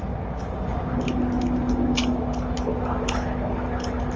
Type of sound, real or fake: real